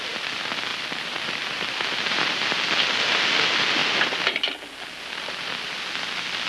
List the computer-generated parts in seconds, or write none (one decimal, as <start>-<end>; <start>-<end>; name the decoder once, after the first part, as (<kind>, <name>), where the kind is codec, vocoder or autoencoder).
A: 0.7-2.5 (vocoder, BigVGAN v2)